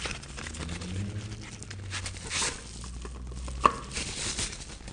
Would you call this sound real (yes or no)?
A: no